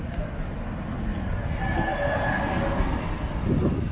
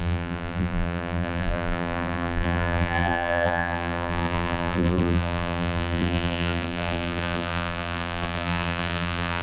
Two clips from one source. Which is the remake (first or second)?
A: second